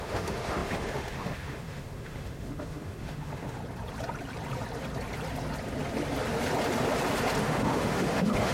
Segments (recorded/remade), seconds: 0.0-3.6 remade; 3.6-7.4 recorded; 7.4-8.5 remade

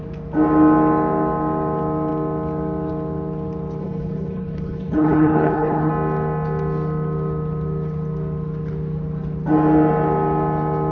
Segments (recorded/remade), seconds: 0.0-3.8 recorded; 3.8-5.9 remade; 5.9-10.9 recorded